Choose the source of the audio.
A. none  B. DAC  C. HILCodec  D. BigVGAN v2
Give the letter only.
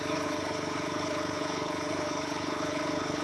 C